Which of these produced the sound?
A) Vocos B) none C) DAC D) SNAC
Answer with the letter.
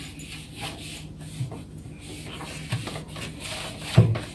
B